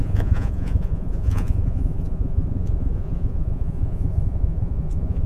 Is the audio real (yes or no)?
no